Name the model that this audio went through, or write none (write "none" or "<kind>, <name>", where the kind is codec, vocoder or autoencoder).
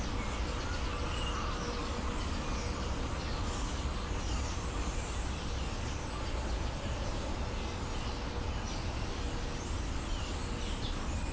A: none